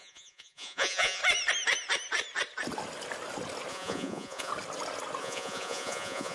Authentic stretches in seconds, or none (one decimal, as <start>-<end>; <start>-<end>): 1.2-3.7; 4.5-5.2